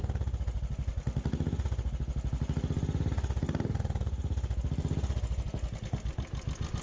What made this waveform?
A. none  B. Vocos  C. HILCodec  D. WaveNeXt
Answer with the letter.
A